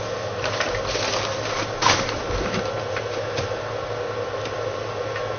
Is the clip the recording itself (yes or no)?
yes